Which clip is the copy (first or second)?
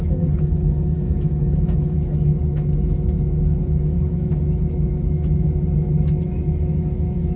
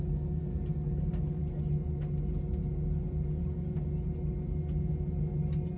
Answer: first